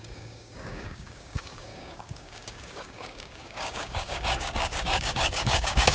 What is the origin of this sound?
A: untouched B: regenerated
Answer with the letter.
B